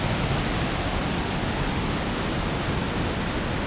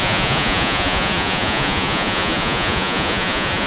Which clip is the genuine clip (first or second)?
first